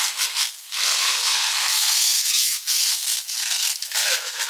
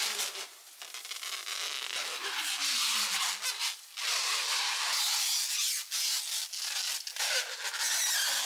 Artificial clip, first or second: first